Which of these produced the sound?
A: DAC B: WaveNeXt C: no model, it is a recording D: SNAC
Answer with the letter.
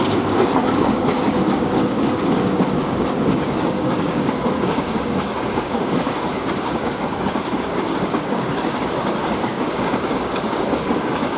A